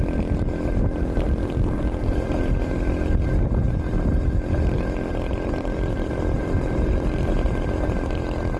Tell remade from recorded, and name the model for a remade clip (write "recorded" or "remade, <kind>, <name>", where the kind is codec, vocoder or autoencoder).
recorded